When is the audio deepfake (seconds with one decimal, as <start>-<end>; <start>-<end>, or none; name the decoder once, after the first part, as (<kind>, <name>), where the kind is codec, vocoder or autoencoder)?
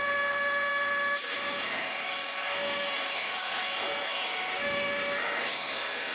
0.0-6.1 (autoencoder, DAC-VAE)